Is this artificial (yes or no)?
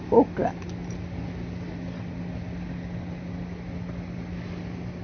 no